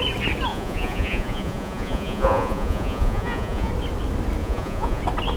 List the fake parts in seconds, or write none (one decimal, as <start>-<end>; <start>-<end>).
0.5-3.7; 4.4-5.0